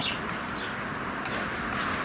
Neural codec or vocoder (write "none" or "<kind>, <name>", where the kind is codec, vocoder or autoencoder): none